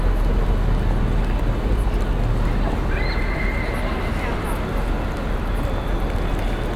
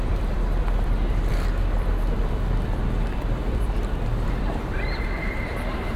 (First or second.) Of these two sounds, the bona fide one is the first